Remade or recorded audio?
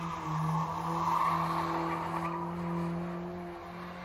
recorded